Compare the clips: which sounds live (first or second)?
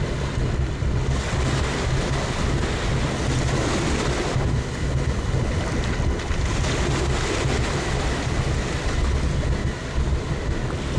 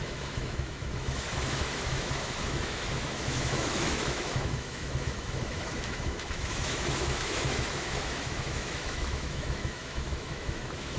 first